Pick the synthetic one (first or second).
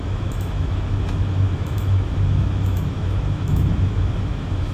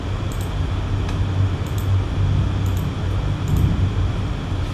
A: first